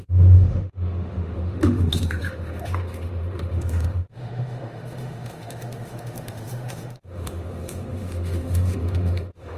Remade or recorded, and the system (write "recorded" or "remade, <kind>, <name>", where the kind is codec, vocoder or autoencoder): remade, autoencoder, DAC-VAE